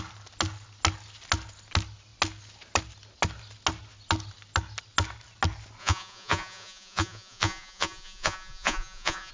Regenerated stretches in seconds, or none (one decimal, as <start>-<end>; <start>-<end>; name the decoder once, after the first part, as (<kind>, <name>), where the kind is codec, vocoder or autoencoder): 5.8-9.3 (vocoder, Vocos)